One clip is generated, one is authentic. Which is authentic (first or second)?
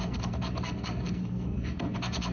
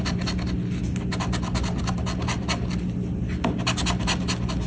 second